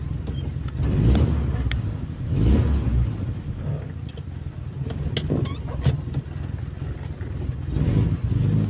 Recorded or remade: recorded